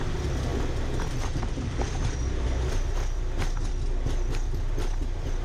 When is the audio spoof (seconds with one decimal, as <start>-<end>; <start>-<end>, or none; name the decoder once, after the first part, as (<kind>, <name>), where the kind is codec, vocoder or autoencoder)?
none